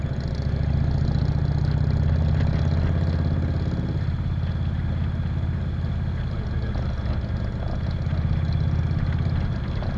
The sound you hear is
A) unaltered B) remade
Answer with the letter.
A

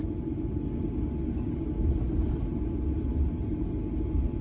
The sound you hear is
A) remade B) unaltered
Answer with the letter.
B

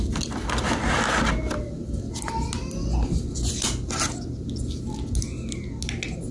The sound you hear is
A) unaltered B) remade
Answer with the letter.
A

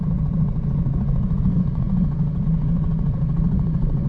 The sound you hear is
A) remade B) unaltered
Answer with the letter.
A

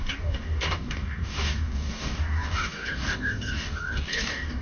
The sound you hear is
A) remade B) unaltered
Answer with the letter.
A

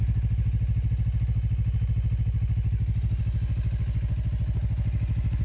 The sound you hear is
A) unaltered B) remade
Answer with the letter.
A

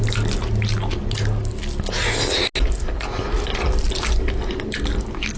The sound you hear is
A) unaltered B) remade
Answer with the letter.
A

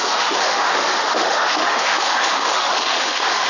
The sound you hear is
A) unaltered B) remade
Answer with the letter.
B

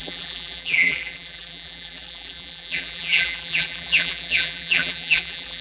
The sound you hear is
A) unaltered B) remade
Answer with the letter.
B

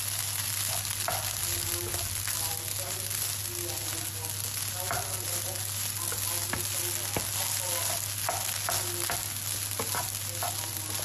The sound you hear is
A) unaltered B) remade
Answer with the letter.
A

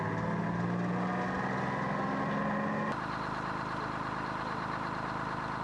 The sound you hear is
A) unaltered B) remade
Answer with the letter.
A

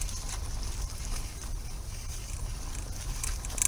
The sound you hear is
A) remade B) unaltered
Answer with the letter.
B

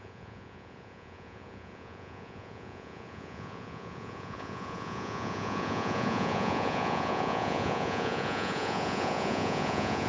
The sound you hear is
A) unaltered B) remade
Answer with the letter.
B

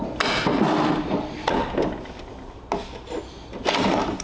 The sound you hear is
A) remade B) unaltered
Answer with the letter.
B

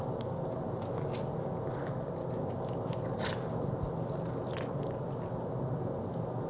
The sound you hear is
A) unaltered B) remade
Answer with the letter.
A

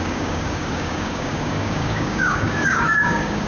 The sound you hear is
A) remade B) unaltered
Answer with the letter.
A